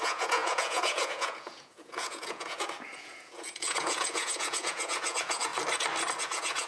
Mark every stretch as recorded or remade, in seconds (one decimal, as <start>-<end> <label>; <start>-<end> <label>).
0.0-5.5 remade; 5.5-6.2 recorded; 6.2-6.7 remade

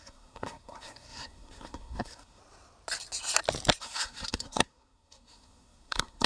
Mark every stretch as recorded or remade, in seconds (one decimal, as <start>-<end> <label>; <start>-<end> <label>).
0.0-2.4 remade; 2.4-3.8 recorded; 3.8-6.3 remade

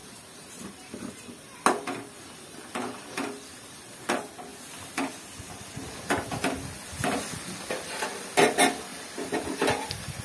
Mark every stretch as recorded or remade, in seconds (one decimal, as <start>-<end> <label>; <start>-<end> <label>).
0.0-0.7 remade; 0.7-3.5 recorded; 3.5-4.0 remade; 4.0-8.9 recorded; 8.9-10.2 remade